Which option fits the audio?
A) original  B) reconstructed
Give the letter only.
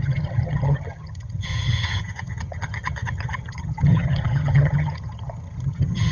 B